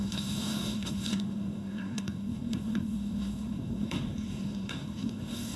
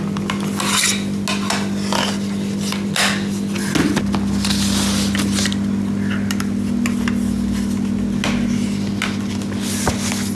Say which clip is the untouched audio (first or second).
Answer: second